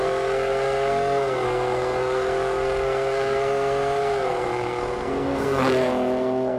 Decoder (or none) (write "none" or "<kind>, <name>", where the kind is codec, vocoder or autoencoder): codec, SNAC